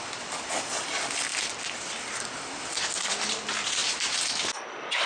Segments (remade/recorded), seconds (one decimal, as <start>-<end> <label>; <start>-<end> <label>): 0.0-1.3 recorded; 1.3-2.8 remade; 2.8-3.8 recorded; 3.8-4.5 remade; 4.5-5.1 recorded